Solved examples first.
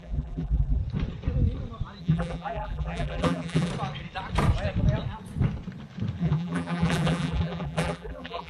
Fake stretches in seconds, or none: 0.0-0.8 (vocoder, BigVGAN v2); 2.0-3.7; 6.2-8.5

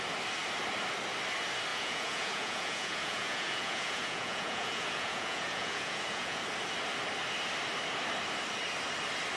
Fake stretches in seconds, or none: 1.7-6.4 (vocoder, Vocos)

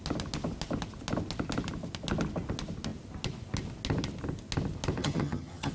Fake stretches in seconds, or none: 5.0-5.7 (vocoder, HiFi-GAN)

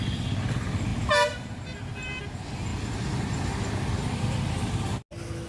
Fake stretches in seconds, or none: none

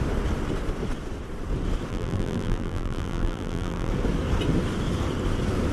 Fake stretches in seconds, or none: 1.9-3.9 (vocoder, BigVGAN v2)

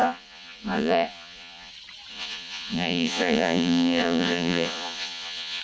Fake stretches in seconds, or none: 0.0-1.7 (vocoder, Vocos); 2.1-5.6

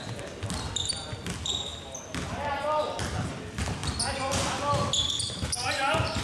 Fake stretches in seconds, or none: none